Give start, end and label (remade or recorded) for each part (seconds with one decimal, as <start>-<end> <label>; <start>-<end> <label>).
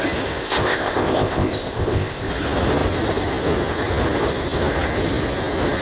0.0-0.4 recorded; 0.4-2.3 remade; 2.3-5.8 recorded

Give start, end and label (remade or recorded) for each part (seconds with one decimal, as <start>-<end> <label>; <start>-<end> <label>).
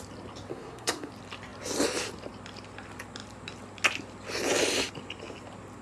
0.0-0.5 recorded; 0.5-1.1 remade; 1.1-5.8 recorded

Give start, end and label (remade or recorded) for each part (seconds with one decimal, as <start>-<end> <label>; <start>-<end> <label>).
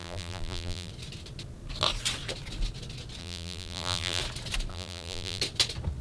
0.0-0.9 remade; 0.9-3.2 recorded; 3.2-4.2 remade; 4.2-4.7 recorded; 4.7-5.4 remade; 5.4-6.0 recorded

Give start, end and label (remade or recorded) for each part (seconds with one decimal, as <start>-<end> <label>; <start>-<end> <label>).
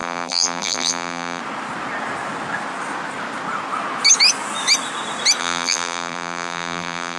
0.0-1.4 remade; 1.4-5.4 recorded; 5.4-7.2 remade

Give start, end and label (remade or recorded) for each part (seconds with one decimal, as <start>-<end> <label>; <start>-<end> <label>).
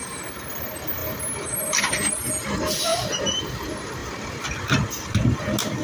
0.0-2.9 recorded; 2.9-3.4 remade; 3.4-5.8 recorded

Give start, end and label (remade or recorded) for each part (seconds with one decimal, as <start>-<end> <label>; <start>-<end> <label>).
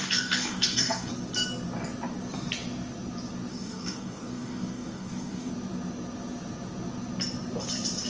0.0-1.1 remade; 1.1-3.5 recorded; 3.5-5.5 remade; 5.5-8.1 recorded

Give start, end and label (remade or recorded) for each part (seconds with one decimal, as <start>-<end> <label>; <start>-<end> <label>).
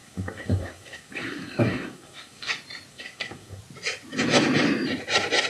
0.0-2.5 remade; 2.5-2.9 recorded; 2.9-3.6 remade; 3.6-5.5 recorded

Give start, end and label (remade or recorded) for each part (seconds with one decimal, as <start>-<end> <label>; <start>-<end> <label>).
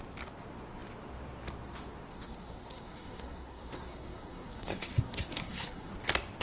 0.0-2.1 recorded; 2.1-5.9 remade; 5.9-6.4 recorded